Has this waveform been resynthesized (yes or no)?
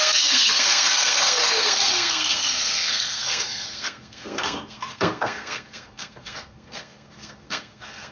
yes